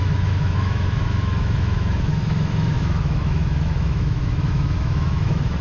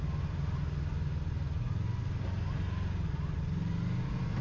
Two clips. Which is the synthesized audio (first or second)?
first